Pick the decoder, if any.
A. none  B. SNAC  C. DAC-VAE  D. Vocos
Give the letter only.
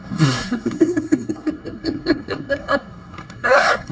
B